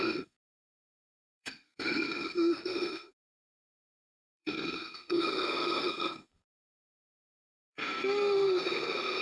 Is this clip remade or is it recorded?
remade